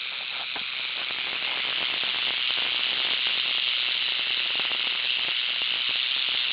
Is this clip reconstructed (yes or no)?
no